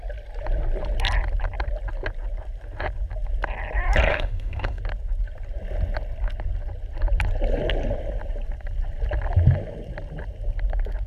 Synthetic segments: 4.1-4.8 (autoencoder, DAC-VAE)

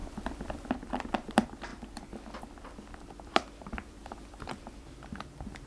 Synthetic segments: 0.7-1.7 (vocoder, BigVGAN v2); 2.4-5.7

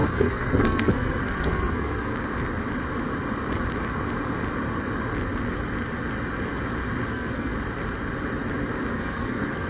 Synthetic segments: 0.0-2.1 (codec, SNAC); 7.1-7.5; 8.9-9.7

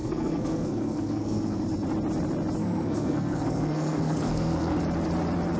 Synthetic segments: 0.0-1.6 (codec, SNAC); 2.6-4.8